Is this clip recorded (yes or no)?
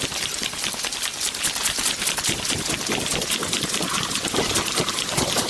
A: yes